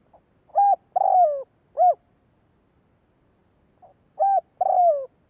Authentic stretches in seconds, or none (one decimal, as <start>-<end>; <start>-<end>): 0.0-5.3